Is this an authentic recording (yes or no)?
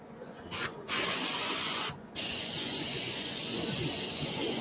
no